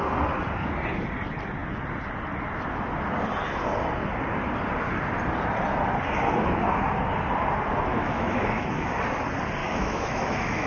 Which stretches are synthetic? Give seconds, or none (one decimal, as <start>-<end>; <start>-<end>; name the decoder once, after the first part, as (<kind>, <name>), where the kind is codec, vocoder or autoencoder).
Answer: 7.9-8.9 (autoencoder, DAC-VAE); 9.6-10.7